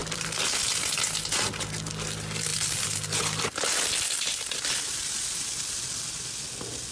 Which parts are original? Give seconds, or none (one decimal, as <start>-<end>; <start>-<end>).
0.7-2.5; 5.8-6.9